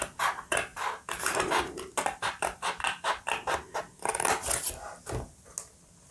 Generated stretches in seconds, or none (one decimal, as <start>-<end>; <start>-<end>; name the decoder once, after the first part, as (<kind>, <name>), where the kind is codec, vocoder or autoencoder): none